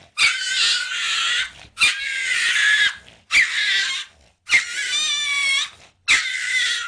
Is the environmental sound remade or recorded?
recorded